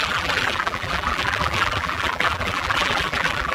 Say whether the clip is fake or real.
fake